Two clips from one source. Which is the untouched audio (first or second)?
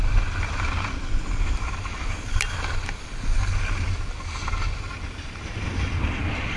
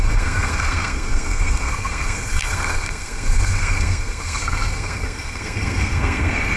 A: first